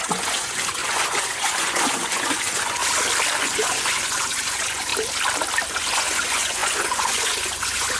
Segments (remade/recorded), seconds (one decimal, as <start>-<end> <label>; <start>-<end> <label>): 0.0-2.8 remade; 2.8-3.4 recorded; 3.4-4.9 remade; 4.9-5.7 recorded; 5.7-8.0 remade